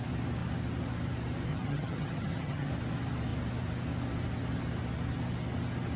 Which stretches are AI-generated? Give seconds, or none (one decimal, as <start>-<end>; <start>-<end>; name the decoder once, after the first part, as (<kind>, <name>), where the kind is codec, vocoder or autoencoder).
1.5-2.7 (vocoder, HiFi-GAN)